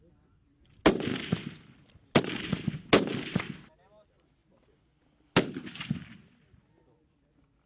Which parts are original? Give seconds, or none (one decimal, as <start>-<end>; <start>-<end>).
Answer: 0.0-7.7